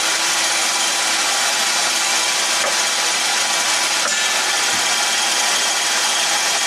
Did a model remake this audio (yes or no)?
no